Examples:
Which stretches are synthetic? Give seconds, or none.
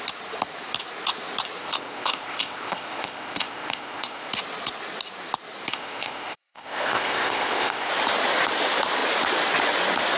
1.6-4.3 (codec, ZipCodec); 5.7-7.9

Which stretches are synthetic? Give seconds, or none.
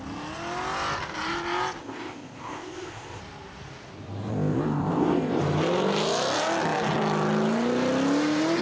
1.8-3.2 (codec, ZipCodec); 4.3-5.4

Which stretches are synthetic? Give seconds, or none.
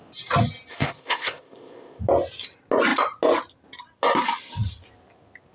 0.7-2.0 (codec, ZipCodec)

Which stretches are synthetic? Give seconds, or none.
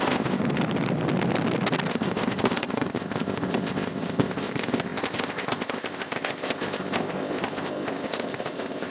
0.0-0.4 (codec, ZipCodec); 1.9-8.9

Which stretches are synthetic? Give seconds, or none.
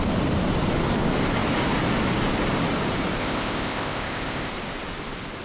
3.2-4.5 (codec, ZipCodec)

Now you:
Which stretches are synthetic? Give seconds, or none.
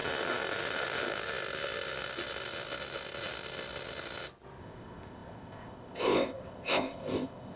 4.6-7.6 (codec, ZipCodec)